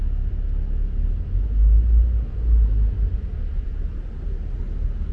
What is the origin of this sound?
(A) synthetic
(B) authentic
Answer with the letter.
B